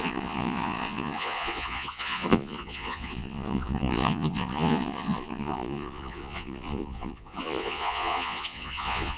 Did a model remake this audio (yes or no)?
yes